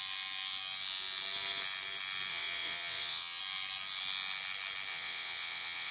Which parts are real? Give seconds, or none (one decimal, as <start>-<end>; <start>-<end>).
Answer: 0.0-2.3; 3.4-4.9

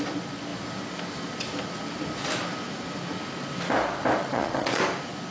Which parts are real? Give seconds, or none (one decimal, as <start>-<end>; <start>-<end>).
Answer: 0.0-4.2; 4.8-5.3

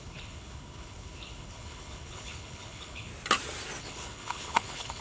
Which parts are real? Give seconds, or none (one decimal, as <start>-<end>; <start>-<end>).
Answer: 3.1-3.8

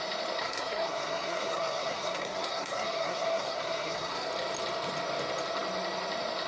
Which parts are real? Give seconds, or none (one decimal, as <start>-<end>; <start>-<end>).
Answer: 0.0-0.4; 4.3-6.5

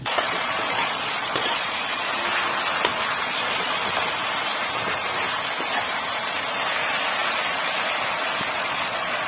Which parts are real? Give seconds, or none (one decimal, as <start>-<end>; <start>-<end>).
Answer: 2.1-3.1; 3.8-8.5

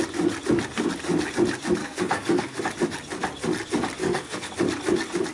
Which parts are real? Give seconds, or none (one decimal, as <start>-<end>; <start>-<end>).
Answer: 0.0-1.8; 2.6-4.0; 4.5-5.3

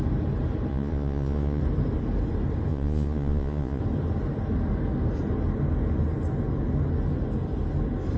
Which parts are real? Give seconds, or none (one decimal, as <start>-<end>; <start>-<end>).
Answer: 0.0-0.7; 1.6-2.7; 3.8-8.2

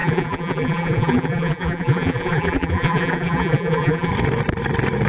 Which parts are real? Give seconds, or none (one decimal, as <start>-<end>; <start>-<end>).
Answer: 4.1-5.1